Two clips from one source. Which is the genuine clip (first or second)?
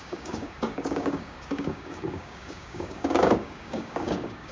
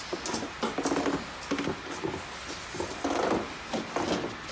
second